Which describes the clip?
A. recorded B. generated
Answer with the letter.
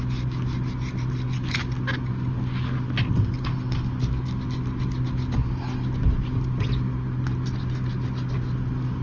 A